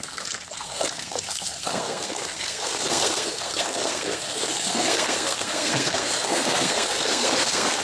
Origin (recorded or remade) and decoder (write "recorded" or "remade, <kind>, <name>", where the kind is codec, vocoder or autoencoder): remade, codec, SNAC